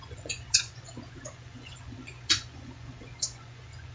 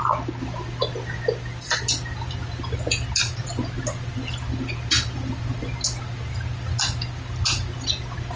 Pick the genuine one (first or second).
second